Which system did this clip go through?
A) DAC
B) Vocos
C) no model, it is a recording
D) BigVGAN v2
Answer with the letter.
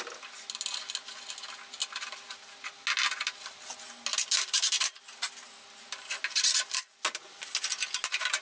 C